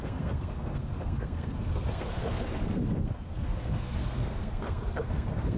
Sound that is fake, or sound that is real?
fake